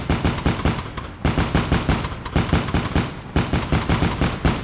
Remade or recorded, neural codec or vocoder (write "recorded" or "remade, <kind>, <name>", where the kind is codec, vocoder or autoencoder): recorded